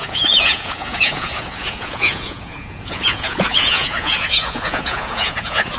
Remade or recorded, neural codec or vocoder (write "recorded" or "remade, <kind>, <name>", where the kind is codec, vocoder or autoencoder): remade, vocoder, Vocos